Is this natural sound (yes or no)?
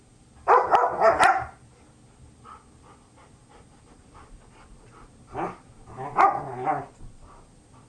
yes